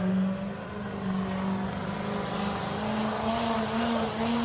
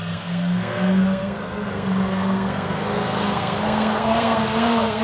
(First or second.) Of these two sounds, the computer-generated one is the second